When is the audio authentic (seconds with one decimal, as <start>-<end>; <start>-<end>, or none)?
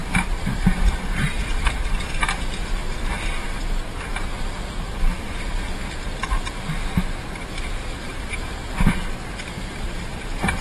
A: 2.8-3.4; 4.1-8.1